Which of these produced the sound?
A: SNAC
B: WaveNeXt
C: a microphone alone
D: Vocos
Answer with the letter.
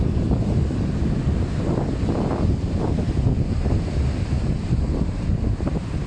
C